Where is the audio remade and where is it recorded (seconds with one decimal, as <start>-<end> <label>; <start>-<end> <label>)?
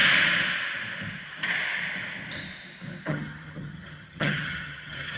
0.0-3.1 recorded; 3.1-5.2 remade